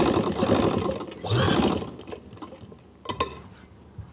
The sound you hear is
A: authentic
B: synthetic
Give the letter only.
A